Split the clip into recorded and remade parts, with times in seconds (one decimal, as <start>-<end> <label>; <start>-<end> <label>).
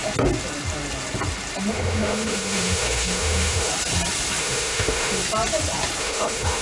0.0-1.7 recorded; 1.7-3.7 remade; 3.7-4.4 recorded; 4.4-5.2 remade; 5.2-6.0 recorded; 6.0-6.6 remade